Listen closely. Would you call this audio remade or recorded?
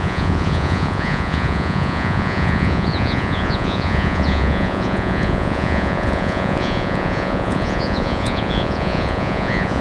remade